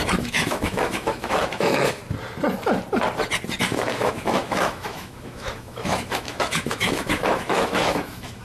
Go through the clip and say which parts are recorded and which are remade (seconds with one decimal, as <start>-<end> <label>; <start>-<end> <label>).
0.0-2.0 remade; 2.0-3.6 recorded; 3.6-8.4 remade